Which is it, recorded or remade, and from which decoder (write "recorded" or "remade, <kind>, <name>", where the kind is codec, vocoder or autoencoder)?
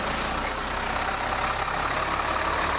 recorded